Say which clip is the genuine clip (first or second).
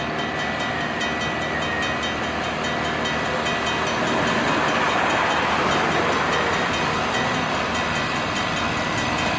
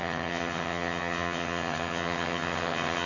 first